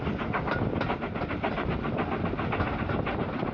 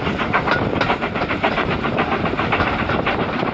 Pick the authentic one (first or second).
first